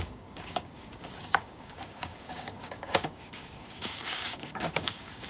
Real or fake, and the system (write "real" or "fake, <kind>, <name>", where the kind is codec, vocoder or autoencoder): fake, codec, DAC